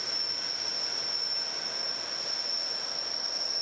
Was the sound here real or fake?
real